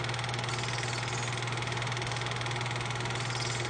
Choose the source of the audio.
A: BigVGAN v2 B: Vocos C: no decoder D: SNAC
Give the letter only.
C